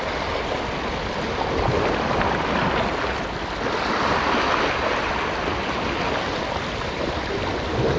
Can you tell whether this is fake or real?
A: real